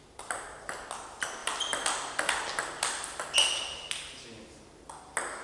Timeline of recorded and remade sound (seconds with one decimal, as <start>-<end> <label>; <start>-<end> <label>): 0.0-5.4 recorded